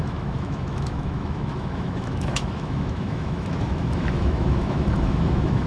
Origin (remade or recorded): remade